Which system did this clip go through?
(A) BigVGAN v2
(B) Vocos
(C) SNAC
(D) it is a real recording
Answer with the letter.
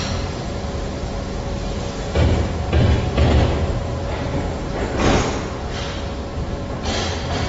D